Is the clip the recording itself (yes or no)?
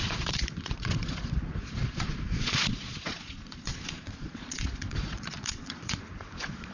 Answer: no